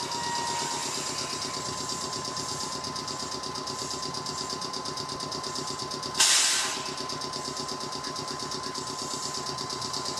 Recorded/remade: recorded